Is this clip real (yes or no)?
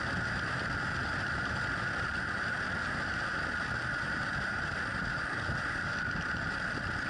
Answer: yes